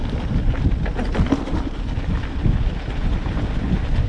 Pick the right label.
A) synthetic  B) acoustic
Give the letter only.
B